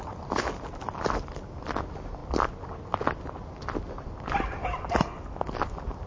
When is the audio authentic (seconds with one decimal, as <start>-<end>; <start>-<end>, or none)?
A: 0.0-6.1